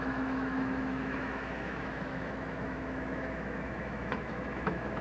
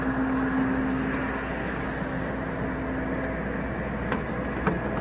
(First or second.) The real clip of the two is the second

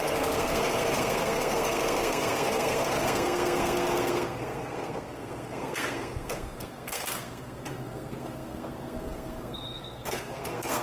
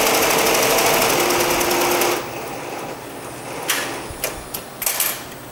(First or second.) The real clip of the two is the second